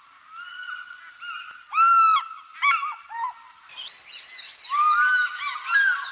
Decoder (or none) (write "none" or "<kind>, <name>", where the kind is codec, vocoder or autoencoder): none